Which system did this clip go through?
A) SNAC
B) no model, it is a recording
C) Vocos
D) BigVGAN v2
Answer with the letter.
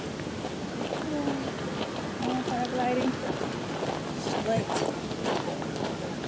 B